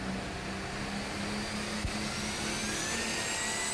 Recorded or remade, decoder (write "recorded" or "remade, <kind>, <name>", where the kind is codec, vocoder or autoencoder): recorded